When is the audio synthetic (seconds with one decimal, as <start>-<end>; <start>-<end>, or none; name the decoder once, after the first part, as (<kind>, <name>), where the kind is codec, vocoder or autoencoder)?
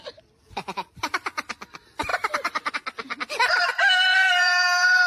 2.1-2.7 (vocoder, BigVGAN v2); 3.7-5.1